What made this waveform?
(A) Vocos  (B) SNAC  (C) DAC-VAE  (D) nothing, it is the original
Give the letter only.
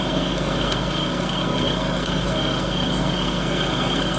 B